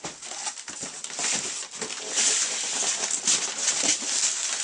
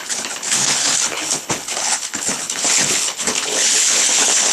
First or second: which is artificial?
second